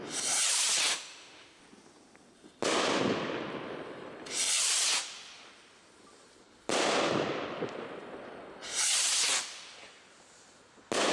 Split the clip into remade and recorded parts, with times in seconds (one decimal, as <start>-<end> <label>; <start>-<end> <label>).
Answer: 0.0-0.9 recorded; 0.9-1.6 remade; 1.6-11.1 recorded